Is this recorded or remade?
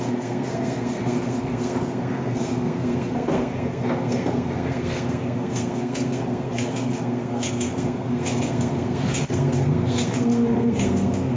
remade